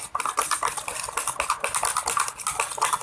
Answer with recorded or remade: recorded